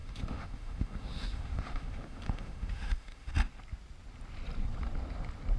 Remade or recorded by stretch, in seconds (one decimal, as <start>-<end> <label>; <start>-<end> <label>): 0.0-3.3 remade; 3.3-5.6 recorded